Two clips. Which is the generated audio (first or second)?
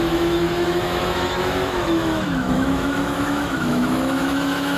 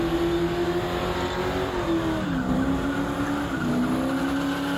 first